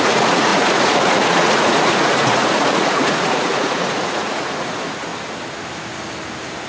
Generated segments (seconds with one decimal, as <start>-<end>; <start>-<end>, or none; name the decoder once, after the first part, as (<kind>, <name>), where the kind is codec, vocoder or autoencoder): 0.0-5.1 (vocoder, Vocos)